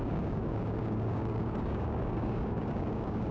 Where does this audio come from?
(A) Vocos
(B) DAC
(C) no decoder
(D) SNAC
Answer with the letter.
B